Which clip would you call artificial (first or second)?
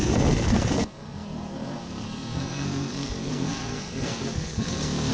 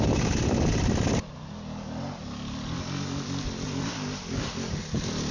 first